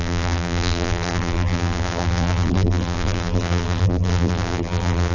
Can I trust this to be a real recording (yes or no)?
no